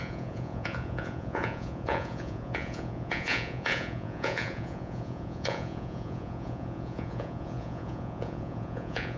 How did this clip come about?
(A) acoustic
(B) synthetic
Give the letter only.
B